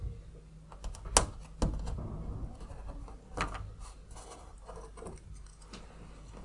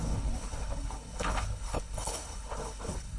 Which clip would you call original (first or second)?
first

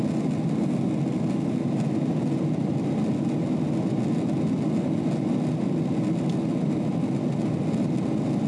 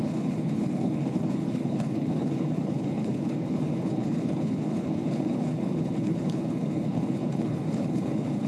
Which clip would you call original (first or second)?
first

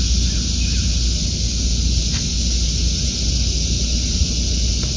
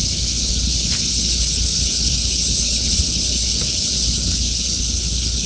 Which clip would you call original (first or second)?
first